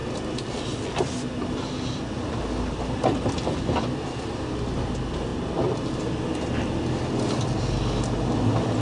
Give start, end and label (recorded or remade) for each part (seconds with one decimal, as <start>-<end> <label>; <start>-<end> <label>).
0.0-8.8 recorded